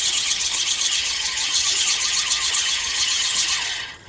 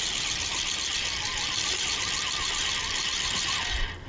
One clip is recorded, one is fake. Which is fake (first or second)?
first